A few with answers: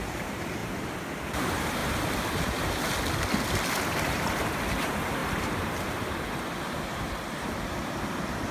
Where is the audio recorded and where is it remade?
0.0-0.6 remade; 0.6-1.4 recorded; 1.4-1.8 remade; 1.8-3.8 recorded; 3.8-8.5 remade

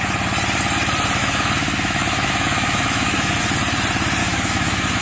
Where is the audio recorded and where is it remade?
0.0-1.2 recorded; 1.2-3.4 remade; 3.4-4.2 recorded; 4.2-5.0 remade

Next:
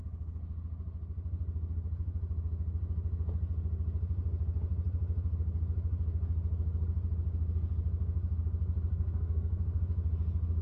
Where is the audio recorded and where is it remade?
0.0-8.9 recorded; 8.9-9.8 remade; 9.8-10.6 recorded

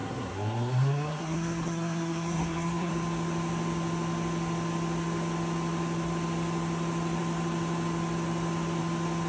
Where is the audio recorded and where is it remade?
0.0-2.9 remade; 2.9-9.3 recorded

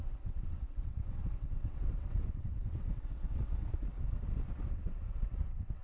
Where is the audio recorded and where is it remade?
0.0-3.9 remade; 3.9-4.6 recorded; 4.6-5.8 remade

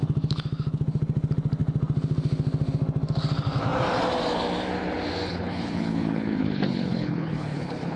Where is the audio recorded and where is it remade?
0.0-5.3 recorded; 5.3-8.0 remade

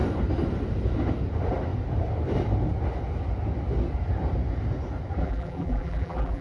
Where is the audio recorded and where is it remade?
0.0-5.2 recorded; 5.2-6.4 remade